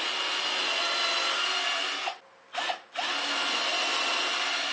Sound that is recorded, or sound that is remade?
recorded